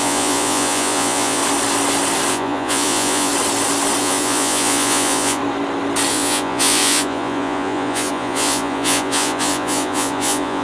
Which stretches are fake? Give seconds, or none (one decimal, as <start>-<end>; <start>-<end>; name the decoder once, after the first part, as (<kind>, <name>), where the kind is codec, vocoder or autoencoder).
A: 0.0-1.4 (vocoder, Vocos); 2.3-3.3; 4.0-5.4; 6.1-10.6